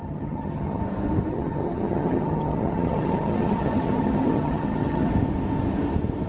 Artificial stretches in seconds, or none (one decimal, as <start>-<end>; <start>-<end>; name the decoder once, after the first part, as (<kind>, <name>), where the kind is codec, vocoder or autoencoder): 0.0-0.8 (vocoder, HiFi-GAN); 1.3-5.1